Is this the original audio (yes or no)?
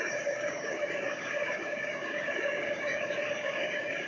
no